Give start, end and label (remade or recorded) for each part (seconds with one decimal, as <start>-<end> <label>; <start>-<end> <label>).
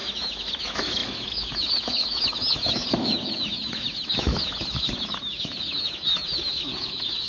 0.0-7.3 remade